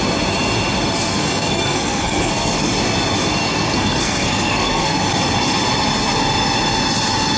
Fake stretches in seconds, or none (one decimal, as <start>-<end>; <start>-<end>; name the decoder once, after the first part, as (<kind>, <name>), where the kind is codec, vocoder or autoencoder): 1.1-2.7 (codec, SNAC); 3.4-5.1